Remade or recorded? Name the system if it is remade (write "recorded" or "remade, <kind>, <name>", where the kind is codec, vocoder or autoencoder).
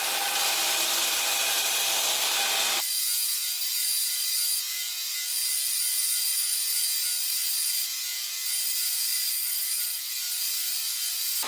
recorded